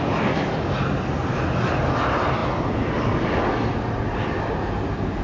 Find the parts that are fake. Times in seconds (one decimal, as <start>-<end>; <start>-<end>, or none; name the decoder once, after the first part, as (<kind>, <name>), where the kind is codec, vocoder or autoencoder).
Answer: none